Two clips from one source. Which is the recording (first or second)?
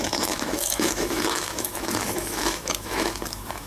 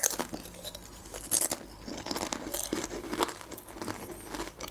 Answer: second